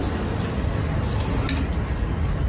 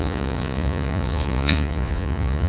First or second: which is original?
first